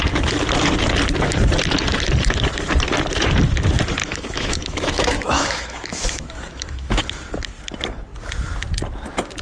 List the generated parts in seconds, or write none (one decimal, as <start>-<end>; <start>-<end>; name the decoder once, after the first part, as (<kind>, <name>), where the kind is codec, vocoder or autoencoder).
4.0-7.0 (autoencoder, DAC-VAE)